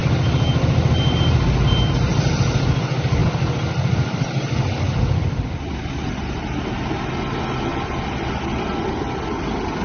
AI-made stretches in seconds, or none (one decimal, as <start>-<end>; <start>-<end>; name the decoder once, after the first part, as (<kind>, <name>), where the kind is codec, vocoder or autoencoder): 0.0-1.2 (vocoder, BigVGAN v2); 2.1-2.6; 3.2-6.3; 7.7-8.3